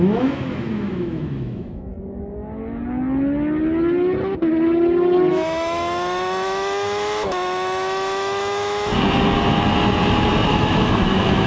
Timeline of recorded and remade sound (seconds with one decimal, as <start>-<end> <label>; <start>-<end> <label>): 0.0-1.9 remade; 1.9-5.3 recorded; 5.3-8.9 remade; 8.9-10.5 recorded; 10.5-11.5 remade